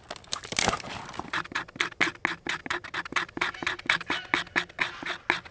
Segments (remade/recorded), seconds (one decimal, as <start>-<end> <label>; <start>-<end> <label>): 0.0-5.5 recorded